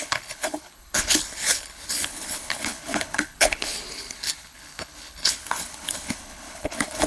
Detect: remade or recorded remade